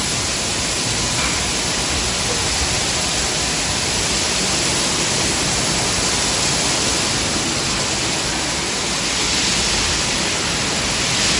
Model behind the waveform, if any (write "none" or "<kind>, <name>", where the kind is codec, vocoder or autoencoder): none